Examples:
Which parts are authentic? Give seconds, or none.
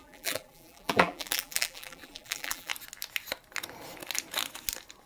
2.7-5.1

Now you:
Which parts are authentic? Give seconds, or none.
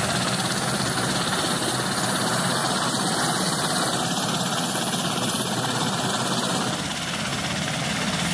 0.0-8.3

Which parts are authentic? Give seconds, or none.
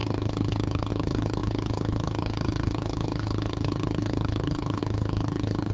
none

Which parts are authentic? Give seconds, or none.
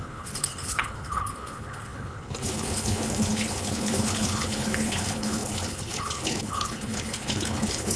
none